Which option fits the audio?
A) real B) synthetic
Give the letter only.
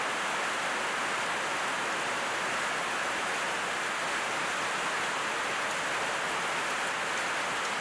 A